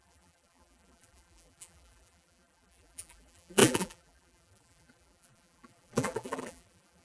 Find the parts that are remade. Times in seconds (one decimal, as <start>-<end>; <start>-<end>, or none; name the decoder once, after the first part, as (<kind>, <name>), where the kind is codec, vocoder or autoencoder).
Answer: 0.0-7.0 (vocoder, BigVGAN v2)